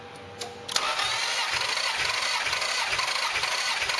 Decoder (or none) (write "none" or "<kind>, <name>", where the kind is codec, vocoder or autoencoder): none